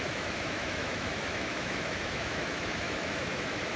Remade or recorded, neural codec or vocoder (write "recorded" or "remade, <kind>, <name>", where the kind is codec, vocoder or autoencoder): remade, autoencoder, DAC-VAE